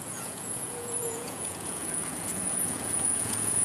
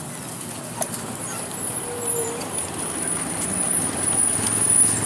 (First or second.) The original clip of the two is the second